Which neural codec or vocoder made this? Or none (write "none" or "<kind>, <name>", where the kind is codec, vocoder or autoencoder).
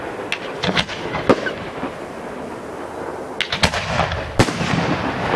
none